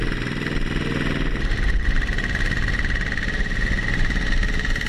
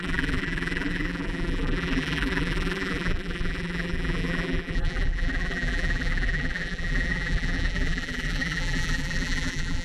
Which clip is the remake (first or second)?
second